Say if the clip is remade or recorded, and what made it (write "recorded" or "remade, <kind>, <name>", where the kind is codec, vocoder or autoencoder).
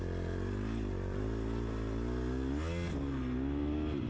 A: recorded